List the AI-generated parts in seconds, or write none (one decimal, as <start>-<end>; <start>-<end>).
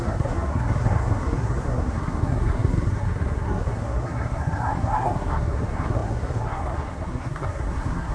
0.0-8.1